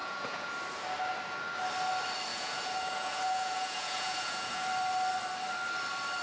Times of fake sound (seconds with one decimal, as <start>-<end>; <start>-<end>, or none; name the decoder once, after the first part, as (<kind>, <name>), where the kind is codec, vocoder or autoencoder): 0.0-0.5 (vocoder, Vocos); 2.3-4.7